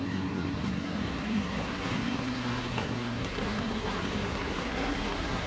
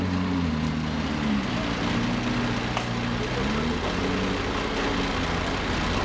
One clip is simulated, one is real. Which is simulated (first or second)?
first